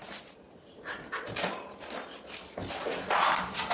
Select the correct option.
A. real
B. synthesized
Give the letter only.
A